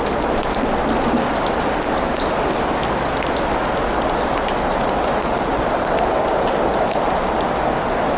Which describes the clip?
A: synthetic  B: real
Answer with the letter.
B